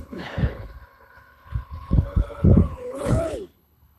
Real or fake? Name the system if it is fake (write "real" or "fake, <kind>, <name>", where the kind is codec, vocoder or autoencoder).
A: fake, codec, HILCodec